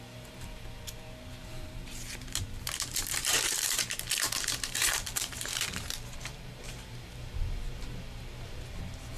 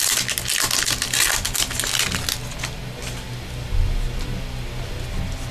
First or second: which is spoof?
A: first